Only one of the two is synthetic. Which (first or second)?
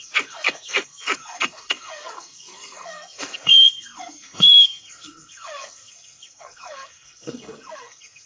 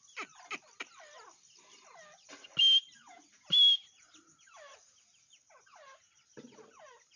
first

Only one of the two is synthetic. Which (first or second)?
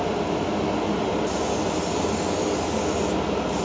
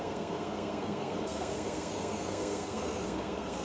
second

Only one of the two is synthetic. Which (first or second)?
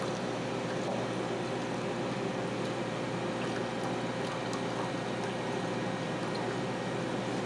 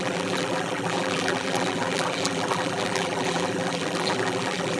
second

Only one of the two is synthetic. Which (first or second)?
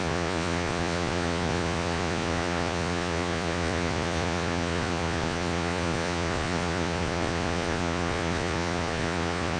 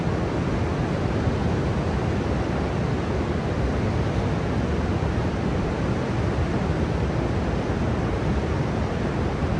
first